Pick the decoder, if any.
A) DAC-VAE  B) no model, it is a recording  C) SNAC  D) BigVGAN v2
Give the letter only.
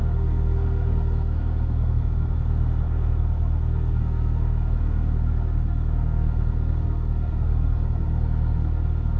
C